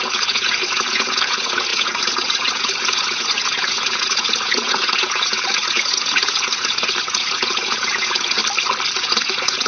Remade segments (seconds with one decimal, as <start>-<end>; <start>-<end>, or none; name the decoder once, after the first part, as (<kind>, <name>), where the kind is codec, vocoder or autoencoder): 0.0-8.4 (vocoder, Vocos); 9.0-9.7